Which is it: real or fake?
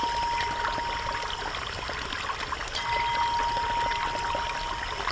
real